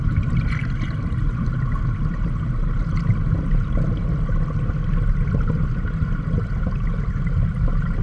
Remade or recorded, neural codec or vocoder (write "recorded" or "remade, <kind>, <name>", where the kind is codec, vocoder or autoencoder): recorded